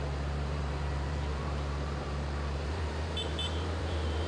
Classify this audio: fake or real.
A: fake